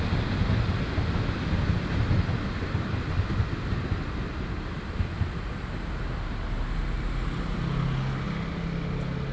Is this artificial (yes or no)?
no